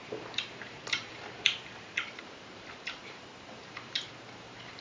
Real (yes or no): no